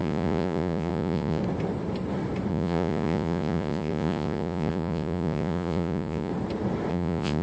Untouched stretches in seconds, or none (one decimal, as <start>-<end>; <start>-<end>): 1.4-2.5; 6.3-6.9